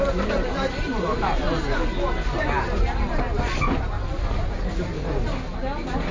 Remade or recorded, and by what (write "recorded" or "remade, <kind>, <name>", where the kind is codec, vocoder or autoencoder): recorded